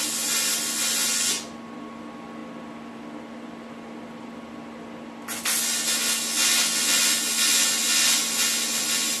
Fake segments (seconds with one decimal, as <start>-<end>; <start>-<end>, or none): none